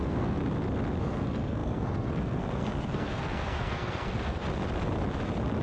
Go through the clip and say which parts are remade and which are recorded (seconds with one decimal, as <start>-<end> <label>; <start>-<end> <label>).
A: 0.0-0.4 remade; 0.4-1.0 recorded; 1.0-4.4 remade; 4.4-5.6 recorded